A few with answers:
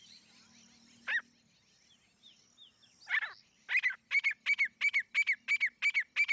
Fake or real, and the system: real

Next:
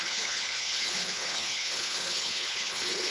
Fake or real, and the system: fake, codec, HILCodec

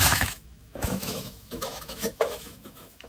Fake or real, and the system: fake, autoencoder, DAC-VAE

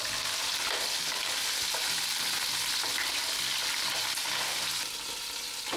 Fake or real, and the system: real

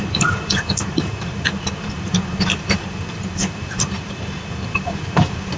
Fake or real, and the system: fake, vocoder, BigVGAN v2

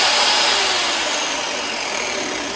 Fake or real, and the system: real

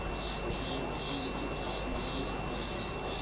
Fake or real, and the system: real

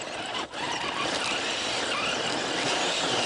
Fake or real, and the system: fake, vocoder, BigVGAN v2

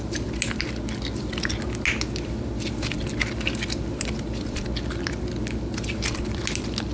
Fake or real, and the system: real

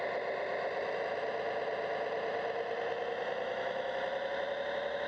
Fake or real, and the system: real